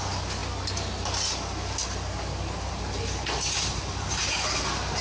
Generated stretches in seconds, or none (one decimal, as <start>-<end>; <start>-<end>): none